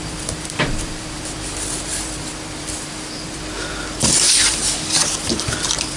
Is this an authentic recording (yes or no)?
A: no